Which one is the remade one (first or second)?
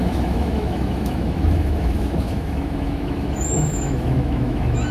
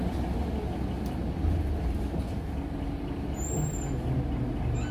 first